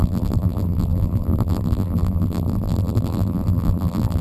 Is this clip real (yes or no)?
no